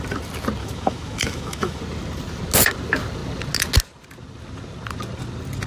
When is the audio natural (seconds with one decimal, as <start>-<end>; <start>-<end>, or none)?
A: 0.0-0.6; 1.8-5.7